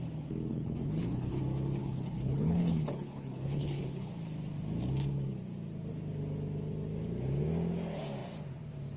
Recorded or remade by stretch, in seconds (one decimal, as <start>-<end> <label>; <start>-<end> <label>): 0.0-0.5 recorded; 0.5-1.4 remade; 1.4-1.8 recorded; 1.8-4.1 remade; 4.1-9.0 recorded